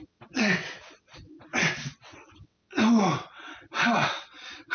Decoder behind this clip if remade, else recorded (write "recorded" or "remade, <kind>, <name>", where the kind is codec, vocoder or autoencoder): remade, vocoder, WaveNeXt